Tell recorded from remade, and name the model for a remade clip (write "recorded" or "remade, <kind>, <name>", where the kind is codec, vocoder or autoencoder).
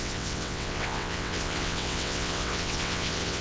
remade, vocoder, WaveNeXt